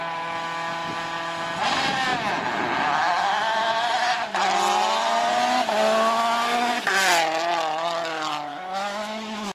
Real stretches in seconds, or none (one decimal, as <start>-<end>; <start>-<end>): 0.0-8.5